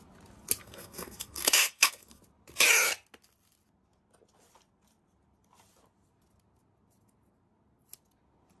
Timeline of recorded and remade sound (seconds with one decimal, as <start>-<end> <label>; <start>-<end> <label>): 0.0-0.6 recorded; 0.6-2.2 remade; 2.2-8.6 recorded